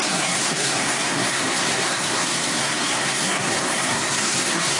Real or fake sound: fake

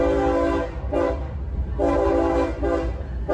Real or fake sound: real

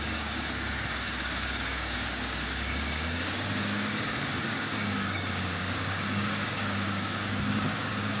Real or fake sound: fake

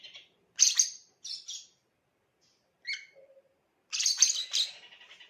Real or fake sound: real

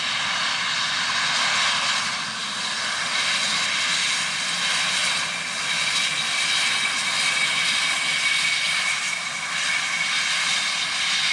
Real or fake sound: real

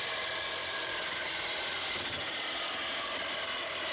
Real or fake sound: real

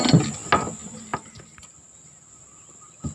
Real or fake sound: real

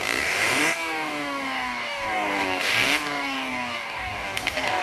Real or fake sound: fake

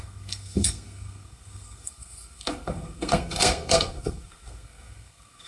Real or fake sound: fake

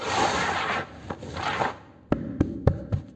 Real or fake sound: real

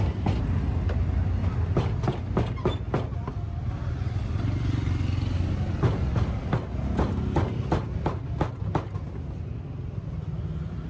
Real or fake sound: real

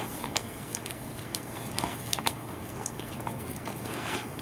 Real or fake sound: fake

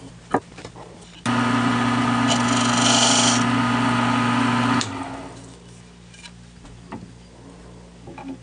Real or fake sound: real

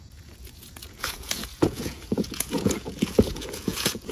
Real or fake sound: fake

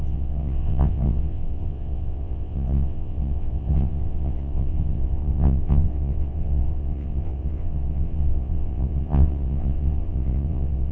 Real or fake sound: fake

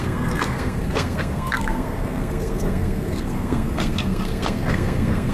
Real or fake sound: fake